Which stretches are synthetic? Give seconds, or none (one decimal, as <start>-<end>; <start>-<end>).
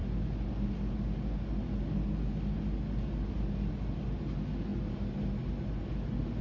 none